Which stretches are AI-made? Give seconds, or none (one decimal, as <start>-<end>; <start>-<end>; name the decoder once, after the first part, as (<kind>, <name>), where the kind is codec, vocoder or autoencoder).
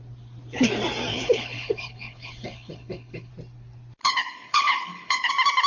1.1-3.3 (codec, HILCodec); 4.0-5.3